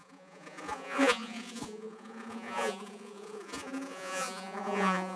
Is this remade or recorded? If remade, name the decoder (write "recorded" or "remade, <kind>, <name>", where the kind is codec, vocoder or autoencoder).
remade, vocoder, Vocos